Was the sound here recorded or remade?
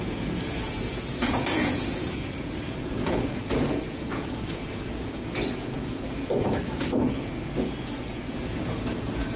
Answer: remade